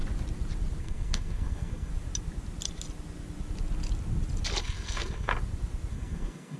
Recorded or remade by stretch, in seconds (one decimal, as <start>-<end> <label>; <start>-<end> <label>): 0.0-0.8 recorded; 0.8-1.9 remade; 1.9-4.6 recorded; 4.6-5.3 remade; 5.3-5.9 recorded; 5.9-6.6 remade